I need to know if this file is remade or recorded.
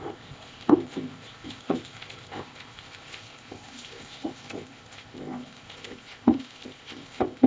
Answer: remade